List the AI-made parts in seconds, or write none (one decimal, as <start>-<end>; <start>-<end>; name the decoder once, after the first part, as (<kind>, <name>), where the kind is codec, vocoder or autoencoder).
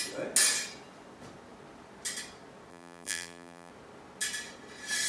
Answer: 2.7-3.7 (vocoder, BigVGAN v2)